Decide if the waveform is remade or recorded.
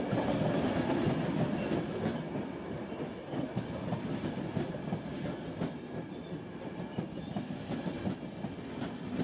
recorded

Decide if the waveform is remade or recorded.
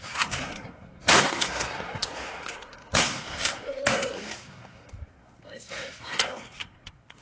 remade